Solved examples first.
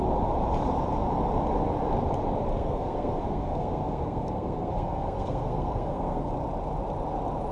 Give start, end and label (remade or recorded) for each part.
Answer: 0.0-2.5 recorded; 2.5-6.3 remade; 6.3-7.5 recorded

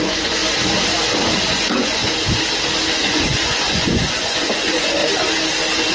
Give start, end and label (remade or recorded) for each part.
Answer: 0.0-0.4 remade; 0.4-1.4 recorded; 1.4-2.0 remade; 2.0-3.0 recorded; 3.0-5.0 remade; 5.0-5.9 recorded

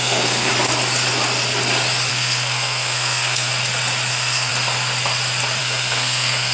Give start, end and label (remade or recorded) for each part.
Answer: 0.0-0.5 remade; 0.5-2.1 recorded; 2.1-3.5 remade; 3.5-4.1 recorded; 4.1-4.5 remade; 4.5-5.6 recorded; 5.6-6.5 remade

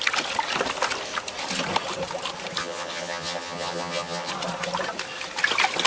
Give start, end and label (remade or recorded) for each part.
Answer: 0.0-2.6 recorded; 2.6-4.3 remade; 4.3-5.9 recorded

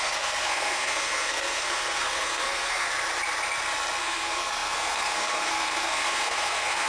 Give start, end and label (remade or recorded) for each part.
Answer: 0.0-2.9 remade; 2.9-4.0 recorded; 4.0-6.9 remade

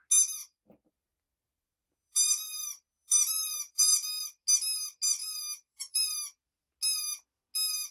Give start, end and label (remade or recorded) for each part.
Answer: 0.0-0.4 recorded; 0.4-4.2 remade; 4.2-5.2 recorded; 5.2-6.2 remade; 6.2-7.9 recorded